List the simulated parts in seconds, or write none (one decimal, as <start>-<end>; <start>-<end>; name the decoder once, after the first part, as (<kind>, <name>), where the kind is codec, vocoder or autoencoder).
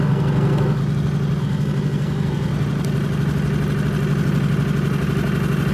0.0-0.8 (codec, SNAC); 1.4-2.5